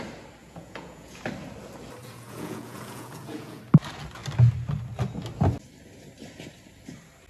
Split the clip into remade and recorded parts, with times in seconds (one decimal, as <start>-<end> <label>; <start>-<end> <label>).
0.0-0.4 recorded; 0.4-1.2 remade; 1.2-2.0 recorded; 2.0-3.6 remade; 3.6-7.3 recorded